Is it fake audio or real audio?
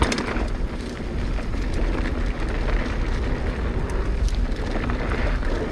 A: real